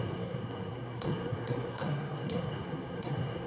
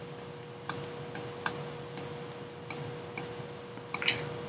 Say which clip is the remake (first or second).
first